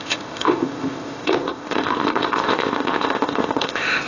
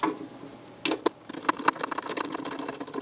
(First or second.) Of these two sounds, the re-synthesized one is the first